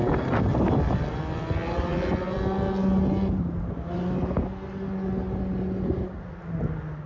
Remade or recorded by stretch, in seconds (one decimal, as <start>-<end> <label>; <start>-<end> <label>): 0.0-7.1 recorded